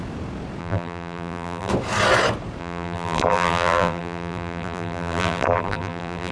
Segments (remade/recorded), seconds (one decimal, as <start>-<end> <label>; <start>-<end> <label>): 0.0-0.6 recorded; 0.6-1.7 remade; 1.7-2.6 recorded; 2.6-6.3 remade